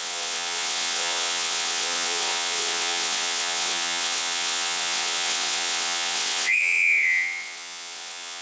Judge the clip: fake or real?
fake